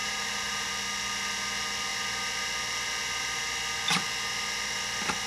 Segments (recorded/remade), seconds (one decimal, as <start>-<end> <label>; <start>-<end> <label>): 0.0-0.7 remade; 0.7-5.3 recorded